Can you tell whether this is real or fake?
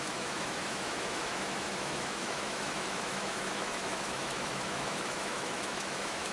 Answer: fake